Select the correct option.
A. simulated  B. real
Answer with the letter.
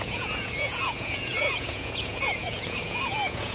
A